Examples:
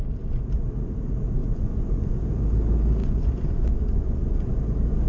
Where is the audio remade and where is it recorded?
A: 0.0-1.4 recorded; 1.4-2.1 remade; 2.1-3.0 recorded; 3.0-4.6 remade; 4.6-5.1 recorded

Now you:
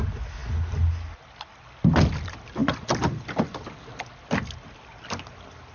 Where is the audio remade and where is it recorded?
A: 0.0-5.7 recorded

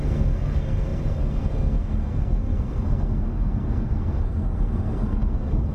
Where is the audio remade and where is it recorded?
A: 0.0-5.7 remade

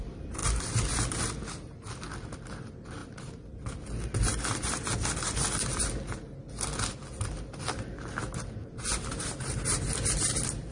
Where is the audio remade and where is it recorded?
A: 0.0-8.6 recorded; 8.6-9.6 remade; 9.6-10.7 recorded

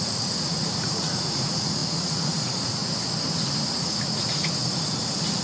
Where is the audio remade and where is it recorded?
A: 0.0-2.8 remade; 2.8-3.5 recorded; 3.5-4.6 remade; 4.6-5.4 recorded